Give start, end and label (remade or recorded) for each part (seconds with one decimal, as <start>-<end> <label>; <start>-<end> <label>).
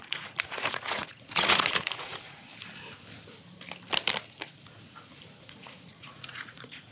0.0-2.5 remade; 2.5-5.4 recorded; 5.4-6.9 remade